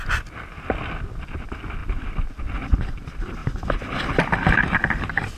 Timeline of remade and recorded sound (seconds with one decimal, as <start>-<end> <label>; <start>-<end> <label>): 0.0-1.8 recorded; 1.8-2.4 remade; 2.4-5.4 recorded